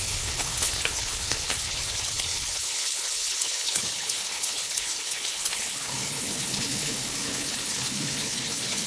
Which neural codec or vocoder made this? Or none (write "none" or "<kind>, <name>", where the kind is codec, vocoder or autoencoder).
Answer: codec, HILCodec